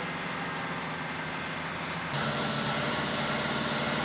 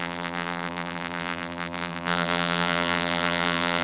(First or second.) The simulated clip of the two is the second